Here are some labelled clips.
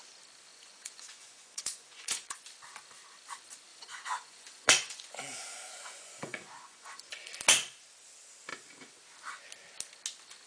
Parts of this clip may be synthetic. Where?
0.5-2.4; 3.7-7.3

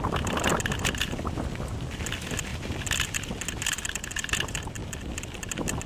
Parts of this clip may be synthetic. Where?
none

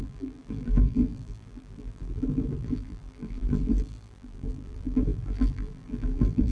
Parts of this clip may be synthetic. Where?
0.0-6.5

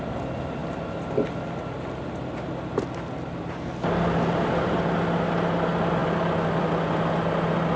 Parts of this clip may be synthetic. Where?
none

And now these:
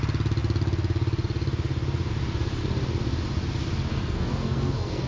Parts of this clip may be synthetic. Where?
3.9-5.1

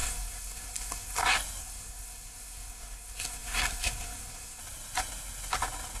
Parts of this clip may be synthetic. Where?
0.0-1.2; 1.6-4.6

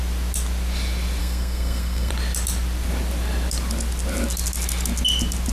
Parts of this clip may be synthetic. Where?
1.2-2.1

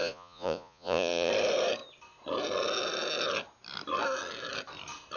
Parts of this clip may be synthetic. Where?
0.0-1.3